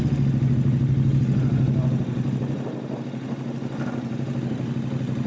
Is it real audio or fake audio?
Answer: real